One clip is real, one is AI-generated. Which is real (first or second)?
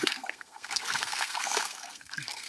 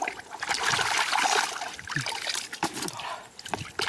second